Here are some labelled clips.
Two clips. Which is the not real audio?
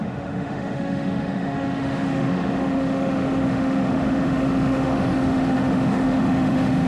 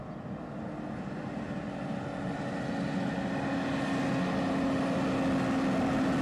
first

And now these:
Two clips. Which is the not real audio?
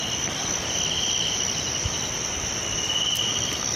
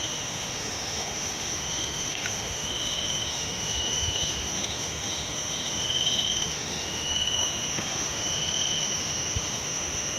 second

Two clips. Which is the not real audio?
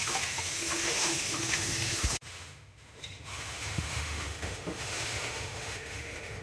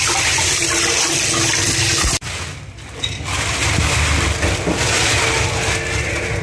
first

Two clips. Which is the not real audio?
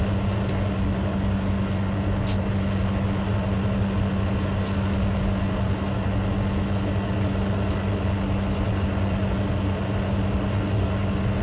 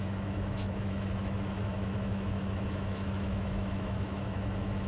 second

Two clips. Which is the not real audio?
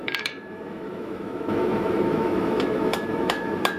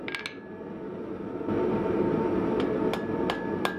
first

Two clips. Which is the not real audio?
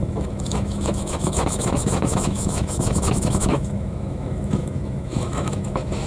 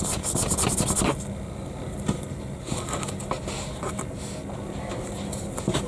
first